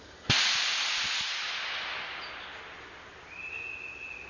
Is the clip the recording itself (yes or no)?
yes